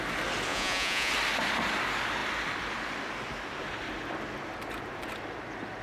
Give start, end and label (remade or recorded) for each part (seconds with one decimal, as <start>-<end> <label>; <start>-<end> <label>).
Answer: 0.0-0.5 recorded; 0.5-1.1 remade; 1.1-5.8 recorded